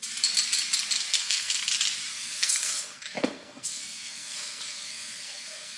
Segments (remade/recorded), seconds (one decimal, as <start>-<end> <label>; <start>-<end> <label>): 0.0-1.1 recorded; 1.1-1.6 remade; 1.6-2.1 recorded; 2.1-5.8 remade